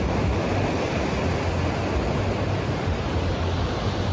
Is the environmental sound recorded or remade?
recorded